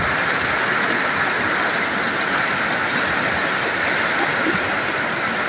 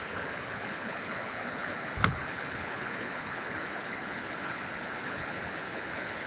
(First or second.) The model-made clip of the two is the second